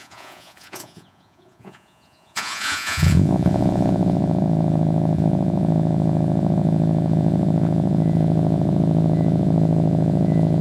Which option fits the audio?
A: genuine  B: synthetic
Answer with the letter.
B